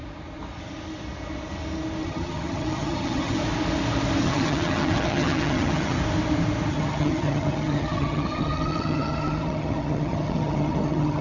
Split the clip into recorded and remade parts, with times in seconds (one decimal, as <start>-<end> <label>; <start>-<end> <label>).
0.0-2.0 recorded; 2.0-3.4 remade; 3.4-4.2 recorded; 4.2-6.0 remade; 6.0-6.7 recorded; 6.7-11.2 remade